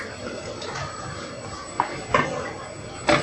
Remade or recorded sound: recorded